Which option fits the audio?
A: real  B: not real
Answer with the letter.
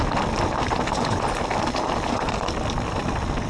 A